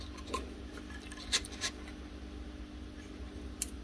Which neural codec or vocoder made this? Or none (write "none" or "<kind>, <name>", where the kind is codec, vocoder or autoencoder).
none